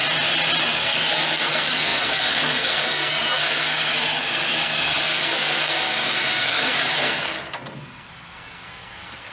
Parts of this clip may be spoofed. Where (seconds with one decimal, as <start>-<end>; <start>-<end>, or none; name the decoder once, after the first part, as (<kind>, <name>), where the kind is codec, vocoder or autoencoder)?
0.6-9.3 (codec, SNAC)